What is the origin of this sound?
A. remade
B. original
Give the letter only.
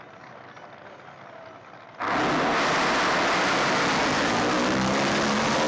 B